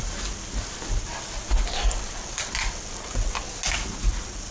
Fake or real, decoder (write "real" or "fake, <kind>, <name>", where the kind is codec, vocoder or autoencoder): real